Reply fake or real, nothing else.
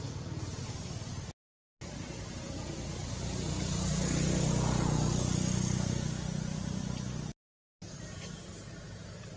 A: real